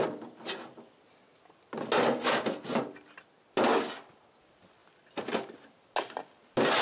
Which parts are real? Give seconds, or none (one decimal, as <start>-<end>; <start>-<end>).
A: 0.0-6.8